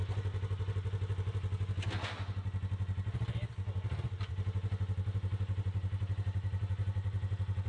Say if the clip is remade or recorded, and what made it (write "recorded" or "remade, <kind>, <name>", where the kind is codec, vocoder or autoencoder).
recorded